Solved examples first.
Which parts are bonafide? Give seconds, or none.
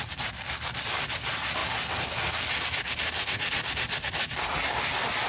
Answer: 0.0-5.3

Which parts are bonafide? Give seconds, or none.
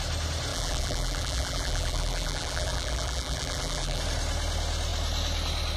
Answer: 0.0-0.5; 4.0-5.8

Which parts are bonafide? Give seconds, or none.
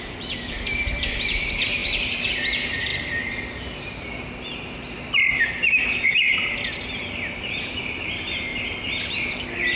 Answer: 2.9-5.4; 8.5-9.8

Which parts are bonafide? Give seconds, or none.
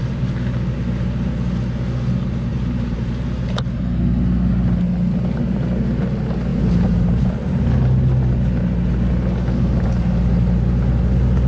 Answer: 0.0-2.5; 3.2-6.5; 7.7-11.5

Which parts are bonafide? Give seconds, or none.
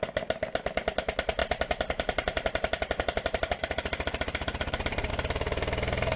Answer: 0.0-1.4; 5.1-6.2